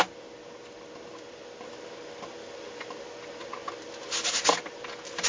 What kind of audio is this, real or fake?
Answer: real